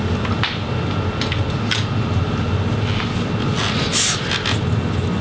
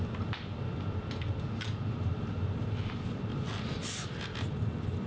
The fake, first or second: second